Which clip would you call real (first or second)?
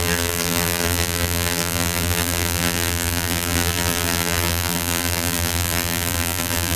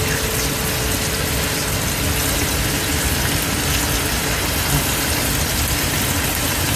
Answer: second